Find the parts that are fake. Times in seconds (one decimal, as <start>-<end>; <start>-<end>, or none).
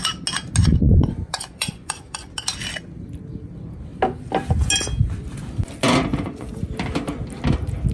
0.6-2.3; 6.1-6.6